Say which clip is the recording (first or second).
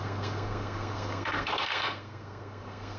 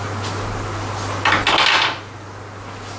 second